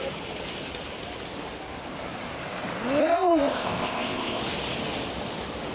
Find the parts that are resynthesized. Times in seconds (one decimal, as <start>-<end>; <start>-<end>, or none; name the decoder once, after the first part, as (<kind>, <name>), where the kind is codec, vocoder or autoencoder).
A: 3.0-4.4 (codec, ZipCodec)